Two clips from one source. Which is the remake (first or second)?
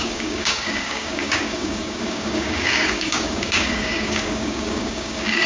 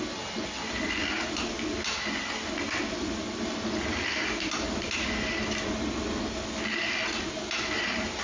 first